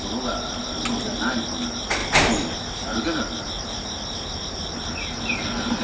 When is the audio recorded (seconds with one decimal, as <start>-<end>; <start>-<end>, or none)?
0.0-5.8